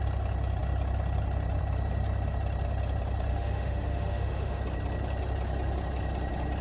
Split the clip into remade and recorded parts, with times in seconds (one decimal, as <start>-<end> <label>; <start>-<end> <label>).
0.0-3.3 recorded; 3.3-4.6 remade; 4.6-6.6 recorded